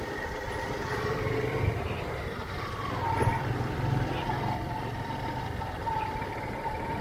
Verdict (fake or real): fake